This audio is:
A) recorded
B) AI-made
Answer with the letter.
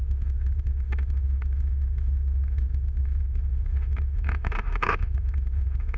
B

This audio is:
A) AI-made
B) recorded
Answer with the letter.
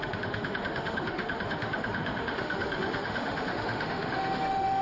A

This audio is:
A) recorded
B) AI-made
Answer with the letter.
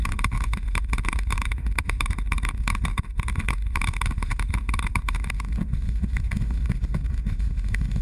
B